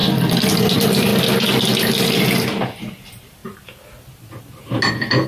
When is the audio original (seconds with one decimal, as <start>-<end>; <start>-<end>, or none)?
0.0-0.6; 1.1-2.1; 3.4-5.3